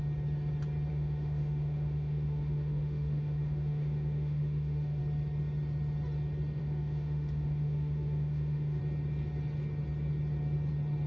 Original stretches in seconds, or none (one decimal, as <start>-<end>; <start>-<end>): 0.0-0.9; 5.0-6.6; 8.8-11.1